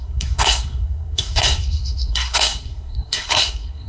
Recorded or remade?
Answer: remade